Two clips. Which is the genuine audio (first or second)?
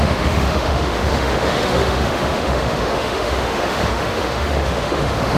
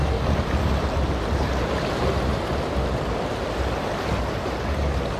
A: second